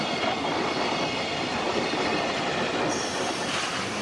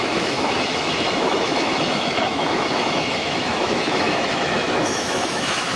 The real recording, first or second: first